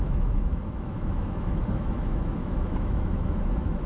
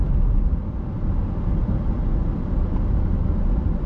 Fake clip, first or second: first